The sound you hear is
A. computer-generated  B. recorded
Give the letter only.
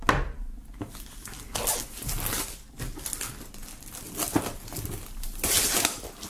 B